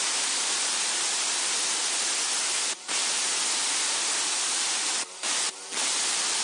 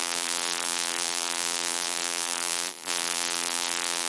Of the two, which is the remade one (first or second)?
second